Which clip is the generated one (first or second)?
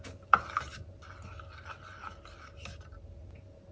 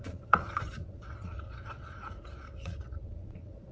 second